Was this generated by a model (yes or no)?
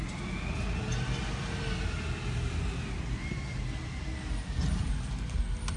no